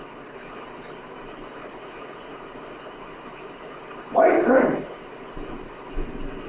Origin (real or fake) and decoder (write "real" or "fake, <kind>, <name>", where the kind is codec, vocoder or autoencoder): real